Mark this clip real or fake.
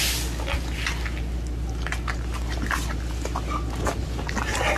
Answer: real